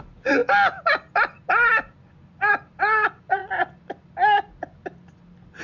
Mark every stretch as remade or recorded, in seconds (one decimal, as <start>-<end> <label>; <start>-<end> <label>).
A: 0.0-5.6 recorded